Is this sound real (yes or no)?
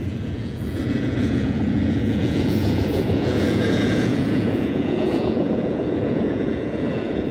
no